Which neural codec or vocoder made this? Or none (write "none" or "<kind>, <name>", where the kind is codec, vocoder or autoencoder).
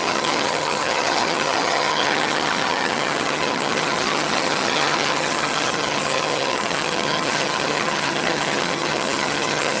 vocoder, HiFi-GAN